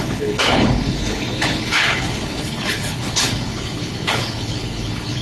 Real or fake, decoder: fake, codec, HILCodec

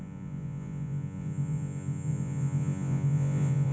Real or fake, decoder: fake, vocoder, Vocos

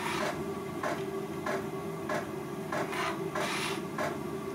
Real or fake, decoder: real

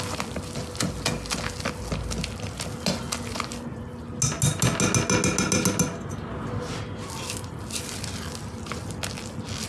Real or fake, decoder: real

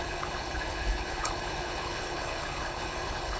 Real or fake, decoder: fake, codec, HILCodec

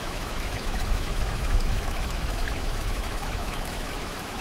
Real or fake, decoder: fake, autoencoder, DAC-VAE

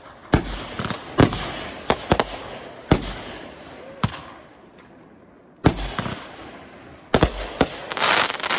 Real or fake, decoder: real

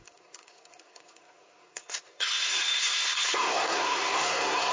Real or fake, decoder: fake, codec, SNAC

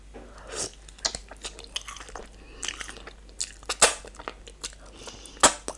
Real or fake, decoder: real